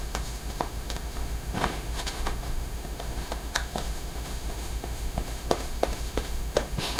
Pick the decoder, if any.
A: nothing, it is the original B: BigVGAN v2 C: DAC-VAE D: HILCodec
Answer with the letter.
C